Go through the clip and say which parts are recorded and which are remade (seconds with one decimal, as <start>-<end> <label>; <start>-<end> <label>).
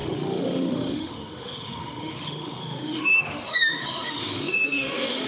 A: 0.0-5.3 remade